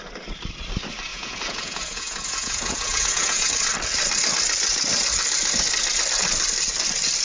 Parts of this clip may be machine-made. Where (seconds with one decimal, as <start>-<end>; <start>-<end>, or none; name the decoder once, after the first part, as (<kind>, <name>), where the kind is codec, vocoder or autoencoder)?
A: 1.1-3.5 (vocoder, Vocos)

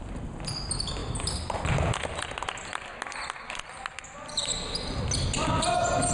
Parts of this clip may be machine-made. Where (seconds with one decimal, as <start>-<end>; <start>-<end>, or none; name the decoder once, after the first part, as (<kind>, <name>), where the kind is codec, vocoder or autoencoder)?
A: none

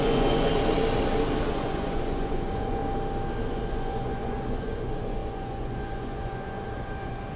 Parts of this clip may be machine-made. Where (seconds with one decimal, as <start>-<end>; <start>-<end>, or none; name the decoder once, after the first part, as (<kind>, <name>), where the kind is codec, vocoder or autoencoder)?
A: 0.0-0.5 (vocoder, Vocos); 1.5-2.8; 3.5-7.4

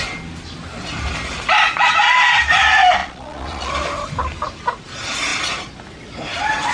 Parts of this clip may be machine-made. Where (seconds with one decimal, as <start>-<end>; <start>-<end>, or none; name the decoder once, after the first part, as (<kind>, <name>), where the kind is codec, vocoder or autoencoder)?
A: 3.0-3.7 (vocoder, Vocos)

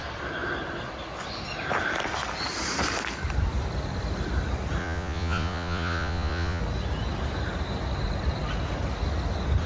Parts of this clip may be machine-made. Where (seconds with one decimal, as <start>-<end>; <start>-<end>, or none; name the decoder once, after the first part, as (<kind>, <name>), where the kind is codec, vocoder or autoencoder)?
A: 4.8-6.6 (vocoder, Vocos)